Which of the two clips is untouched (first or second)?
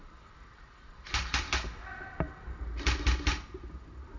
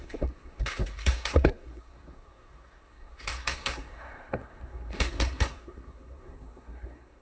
first